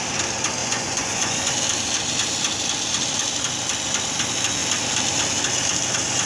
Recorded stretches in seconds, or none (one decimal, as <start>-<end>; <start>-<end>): 0.0-0.6; 1.5-6.3